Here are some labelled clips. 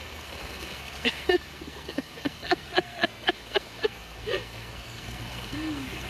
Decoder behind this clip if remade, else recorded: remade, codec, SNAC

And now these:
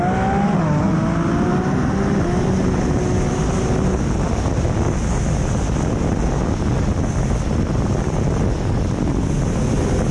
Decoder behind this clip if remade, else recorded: recorded